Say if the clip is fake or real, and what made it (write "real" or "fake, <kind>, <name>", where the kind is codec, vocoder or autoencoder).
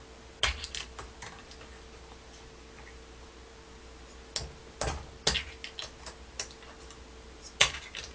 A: real